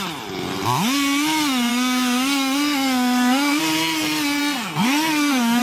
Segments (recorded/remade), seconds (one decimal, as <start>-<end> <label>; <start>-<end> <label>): 0.0-1.7 recorded; 1.7-3.6 remade; 3.6-4.4 recorded; 4.4-5.6 remade

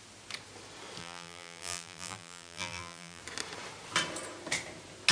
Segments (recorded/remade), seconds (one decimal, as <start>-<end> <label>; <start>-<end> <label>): 0.0-1.0 recorded; 1.0-3.2 remade; 3.2-5.1 recorded

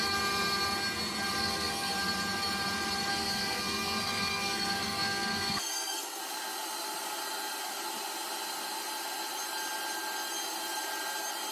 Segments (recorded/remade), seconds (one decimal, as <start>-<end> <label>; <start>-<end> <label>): 0.0-1.4 recorded; 1.4-1.9 remade; 1.9-3.1 recorded; 3.1-6.2 remade; 6.2-11.5 recorded

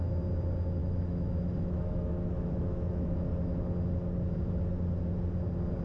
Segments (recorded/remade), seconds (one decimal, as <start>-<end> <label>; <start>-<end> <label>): 0.0-0.8 recorded; 0.8-3.3 remade; 3.3-5.8 recorded

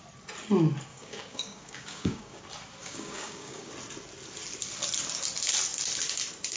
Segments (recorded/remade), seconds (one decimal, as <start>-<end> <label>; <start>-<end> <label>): 0.0-0.9 recorded; 0.9-2.4 remade; 2.4-2.8 recorded; 2.8-3.7 remade; 3.7-6.6 recorded

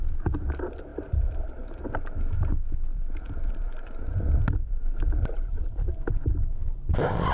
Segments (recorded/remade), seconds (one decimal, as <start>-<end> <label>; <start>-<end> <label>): 0.0-0.9 recorded; 0.9-1.5 remade; 1.5-2.9 recorded; 2.9-6.0 remade; 6.0-7.3 recorded

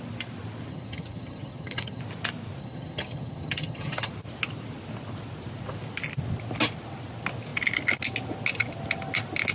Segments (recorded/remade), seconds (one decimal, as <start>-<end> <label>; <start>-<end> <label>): 0.0-0.7 recorded; 0.7-2.0 remade; 2.0-2.6 recorded; 2.6-4.1 remade; 4.1-9.5 recorded